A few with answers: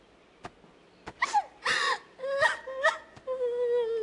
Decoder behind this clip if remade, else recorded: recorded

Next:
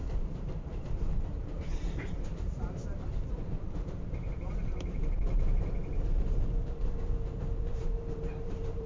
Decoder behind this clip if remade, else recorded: remade, vocoder, BigVGAN v2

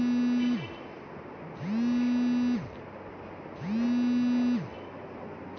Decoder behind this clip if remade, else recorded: recorded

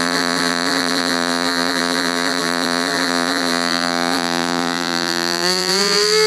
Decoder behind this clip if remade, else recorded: remade, vocoder, BigVGAN v2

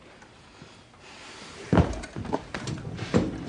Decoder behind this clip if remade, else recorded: remade, vocoder, BigVGAN v2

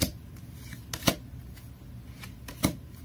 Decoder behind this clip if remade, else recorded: recorded